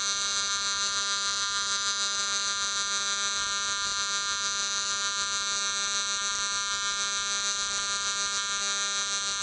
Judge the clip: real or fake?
real